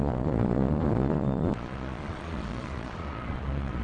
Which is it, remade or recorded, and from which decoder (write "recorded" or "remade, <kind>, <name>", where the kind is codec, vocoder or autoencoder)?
remade, vocoder, Vocos